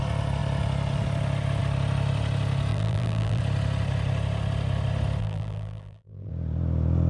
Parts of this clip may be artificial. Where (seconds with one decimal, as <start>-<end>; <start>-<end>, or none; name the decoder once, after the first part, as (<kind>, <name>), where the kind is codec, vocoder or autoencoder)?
2.7-3.4 (vocoder, BigVGAN v2); 5.2-6.3